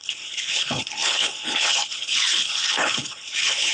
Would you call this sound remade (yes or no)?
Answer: yes